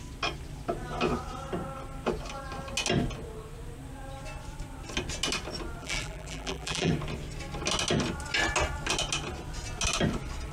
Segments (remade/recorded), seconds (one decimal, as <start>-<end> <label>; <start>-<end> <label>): 0.0-5.8 recorded; 5.8-6.9 remade; 6.9-10.5 recorded